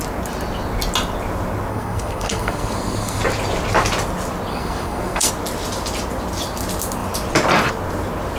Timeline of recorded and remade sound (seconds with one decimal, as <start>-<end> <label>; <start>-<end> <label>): 0.0-1.7 recorded; 1.7-3.2 remade; 3.2-4.5 recorded; 4.5-5.3 remade; 5.3-8.4 recorded